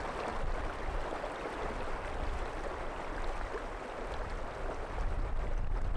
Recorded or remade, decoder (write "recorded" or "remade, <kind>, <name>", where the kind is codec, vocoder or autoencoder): recorded